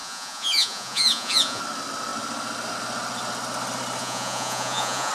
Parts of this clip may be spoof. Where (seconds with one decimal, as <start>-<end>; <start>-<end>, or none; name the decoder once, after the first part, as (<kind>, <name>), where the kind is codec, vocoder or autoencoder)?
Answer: 0.0-1.6 (vocoder, Vocos); 4.0-5.1